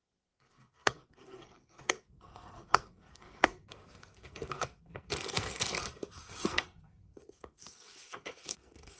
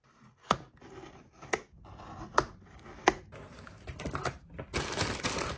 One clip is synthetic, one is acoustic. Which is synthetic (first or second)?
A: first